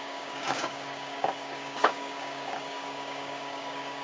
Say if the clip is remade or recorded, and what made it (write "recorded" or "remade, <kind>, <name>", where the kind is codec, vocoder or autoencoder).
remade, codec, DAC